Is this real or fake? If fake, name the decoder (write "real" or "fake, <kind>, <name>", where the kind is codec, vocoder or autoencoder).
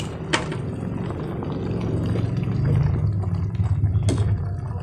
real